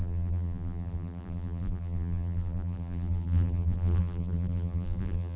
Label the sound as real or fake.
fake